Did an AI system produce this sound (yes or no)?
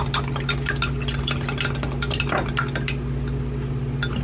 no